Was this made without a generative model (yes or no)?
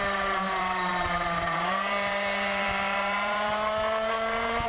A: no